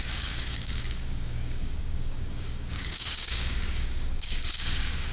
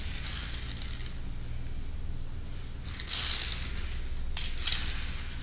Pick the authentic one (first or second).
second